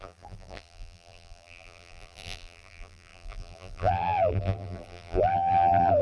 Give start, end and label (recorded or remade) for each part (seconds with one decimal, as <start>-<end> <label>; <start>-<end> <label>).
0.0-6.0 remade